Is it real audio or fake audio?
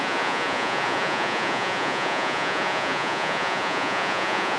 fake